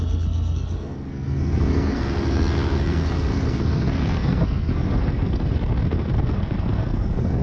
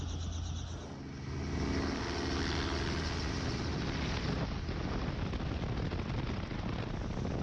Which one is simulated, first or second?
first